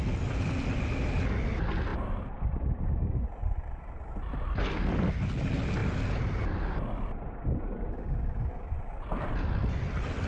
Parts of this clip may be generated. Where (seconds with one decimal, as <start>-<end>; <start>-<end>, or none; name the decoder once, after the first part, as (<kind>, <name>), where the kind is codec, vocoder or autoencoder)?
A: none